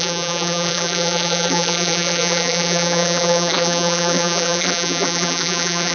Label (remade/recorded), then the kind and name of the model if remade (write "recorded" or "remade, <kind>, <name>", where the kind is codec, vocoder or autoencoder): remade, vocoder, BigVGAN v2